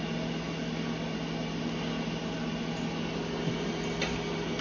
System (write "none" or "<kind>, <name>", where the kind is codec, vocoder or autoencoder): none